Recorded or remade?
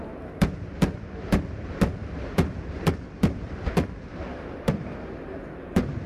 remade